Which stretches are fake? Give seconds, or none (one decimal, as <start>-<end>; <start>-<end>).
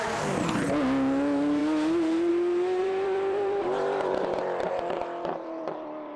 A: 2.8-6.2